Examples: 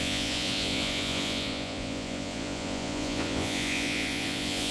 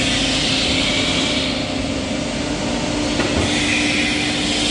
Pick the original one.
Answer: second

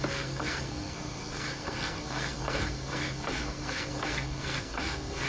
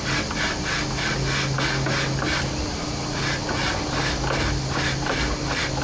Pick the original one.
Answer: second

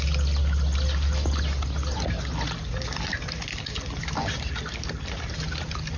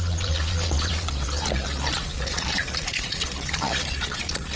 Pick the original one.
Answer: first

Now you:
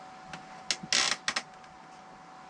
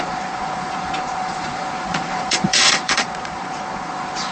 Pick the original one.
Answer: first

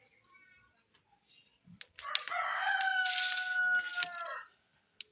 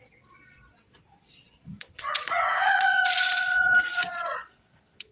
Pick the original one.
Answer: first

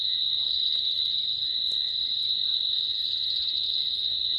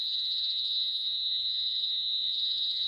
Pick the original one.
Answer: first